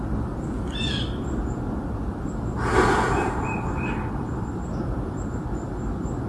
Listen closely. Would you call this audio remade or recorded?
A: remade